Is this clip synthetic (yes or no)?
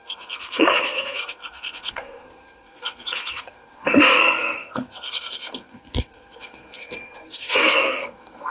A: yes